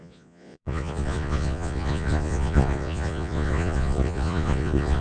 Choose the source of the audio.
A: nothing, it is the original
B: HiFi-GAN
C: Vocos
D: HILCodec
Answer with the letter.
C